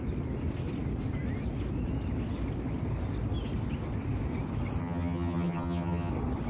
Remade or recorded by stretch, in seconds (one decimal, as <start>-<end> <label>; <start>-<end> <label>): 0.0-4.8 recorded; 4.8-6.1 remade; 6.1-6.5 recorded

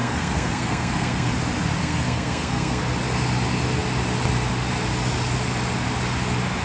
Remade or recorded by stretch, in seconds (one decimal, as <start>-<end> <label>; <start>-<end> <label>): 0.0-1.3 remade; 1.3-1.8 recorded; 1.8-2.8 remade; 2.8-6.6 recorded

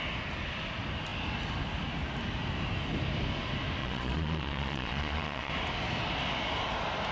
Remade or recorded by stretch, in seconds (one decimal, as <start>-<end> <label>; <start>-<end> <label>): 0.0-3.8 recorded; 3.8-5.5 remade; 5.5-7.1 recorded

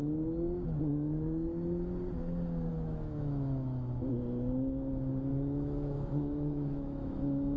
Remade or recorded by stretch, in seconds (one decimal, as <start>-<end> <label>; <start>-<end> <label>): 0.0-2.7 recorded; 2.7-4.1 remade; 4.1-5.3 recorded; 5.3-7.6 remade

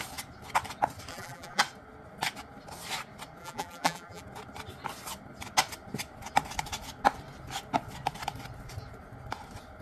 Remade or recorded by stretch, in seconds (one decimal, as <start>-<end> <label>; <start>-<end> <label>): 0.0-1.1 recorded; 1.1-1.6 remade; 1.6-3.4 recorded; 3.4-4.2 remade; 4.2-9.8 recorded

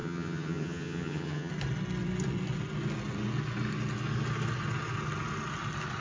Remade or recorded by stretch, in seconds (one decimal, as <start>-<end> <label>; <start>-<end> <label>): 0.0-1.5 remade; 1.5-6.0 recorded

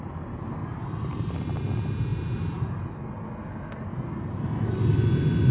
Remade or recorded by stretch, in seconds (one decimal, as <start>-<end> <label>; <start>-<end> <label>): 0.0-0.6 recorded; 0.6-1.5 remade; 1.5-5.5 recorded